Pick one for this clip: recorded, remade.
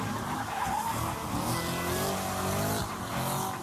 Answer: recorded